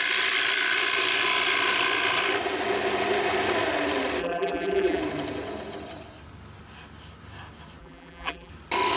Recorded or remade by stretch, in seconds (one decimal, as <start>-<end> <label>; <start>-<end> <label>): 0.0-4.2 recorded; 4.2-5.0 remade; 5.0-7.8 recorded; 7.8-8.5 remade; 8.5-9.0 recorded